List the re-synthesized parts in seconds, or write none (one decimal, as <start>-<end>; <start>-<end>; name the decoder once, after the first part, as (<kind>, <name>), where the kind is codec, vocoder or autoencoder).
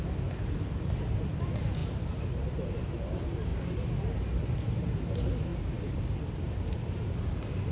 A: none